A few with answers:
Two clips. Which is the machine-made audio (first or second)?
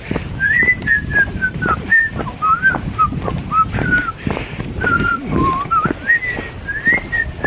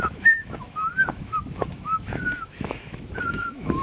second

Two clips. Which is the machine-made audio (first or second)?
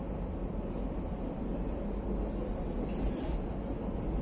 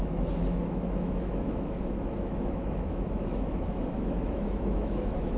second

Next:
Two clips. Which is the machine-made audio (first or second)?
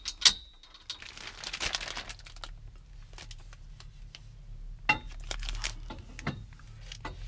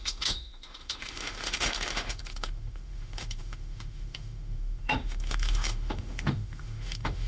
second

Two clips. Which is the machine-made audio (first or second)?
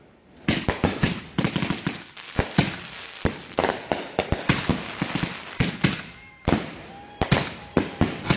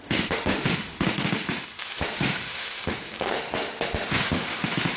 second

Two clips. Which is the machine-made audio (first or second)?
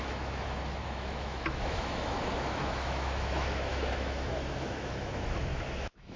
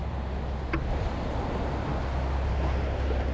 first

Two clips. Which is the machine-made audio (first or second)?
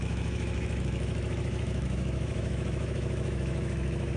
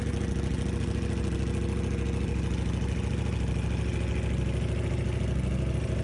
first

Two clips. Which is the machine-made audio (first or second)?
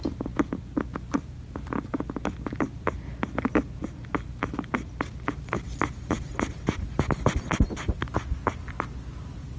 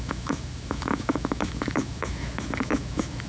second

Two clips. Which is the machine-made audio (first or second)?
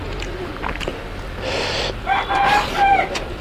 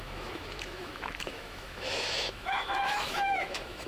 second